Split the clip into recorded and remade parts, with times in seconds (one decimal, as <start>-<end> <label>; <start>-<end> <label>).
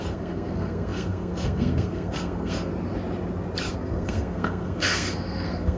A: 0.0-2.7 remade; 2.7-3.7 recorded; 3.7-5.8 remade